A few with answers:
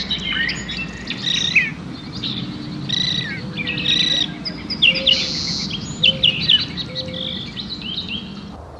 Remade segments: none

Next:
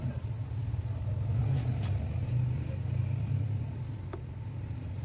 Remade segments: 0.6-3.6 (vocoder, BigVGAN v2)

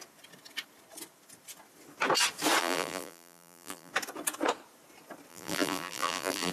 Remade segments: 2.6-3.9 (vocoder, BigVGAN v2); 5.3-6.5

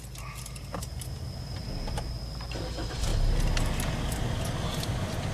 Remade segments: none

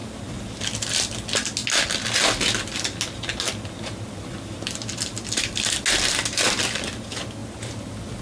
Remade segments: 7.4-8.2 (vocoder, BigVGAN v2)

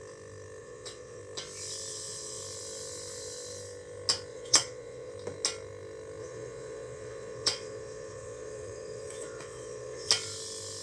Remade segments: 0.6-1.2 (vocoder, Vocos); 1.9-2.4; 4.3-5.1; 6.2-10.1

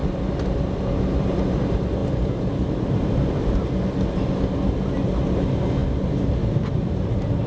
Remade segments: none

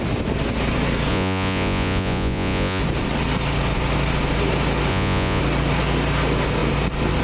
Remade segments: 1.1-2.8 (vocoder, Vocos); 4.9-5.4